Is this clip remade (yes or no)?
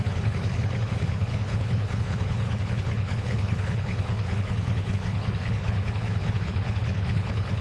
yes